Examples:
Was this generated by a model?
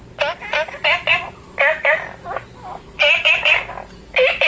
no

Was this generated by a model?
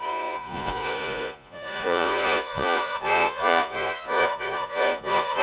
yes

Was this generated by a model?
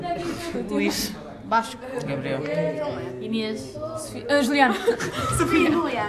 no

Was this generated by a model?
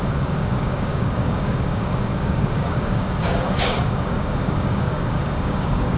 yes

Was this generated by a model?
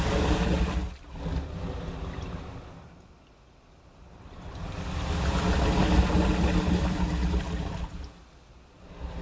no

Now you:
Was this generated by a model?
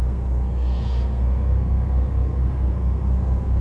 yes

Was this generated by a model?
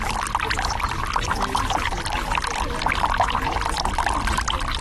no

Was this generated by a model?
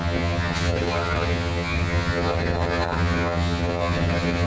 yes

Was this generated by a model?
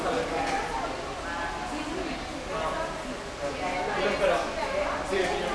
no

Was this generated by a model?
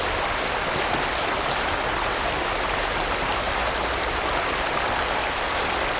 no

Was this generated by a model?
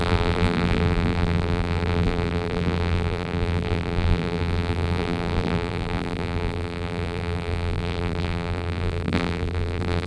yes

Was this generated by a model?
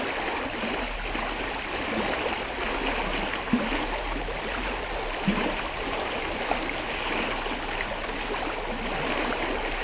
no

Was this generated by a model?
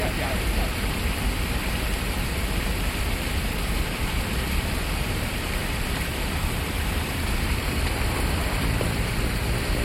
yes